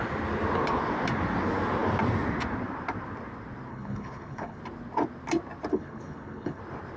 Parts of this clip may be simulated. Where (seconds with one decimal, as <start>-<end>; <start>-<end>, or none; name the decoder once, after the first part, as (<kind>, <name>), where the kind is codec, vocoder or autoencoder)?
3.7-4.6 (codec, HILCodec); 5.7-6.6